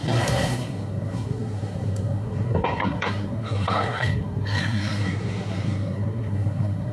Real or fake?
fake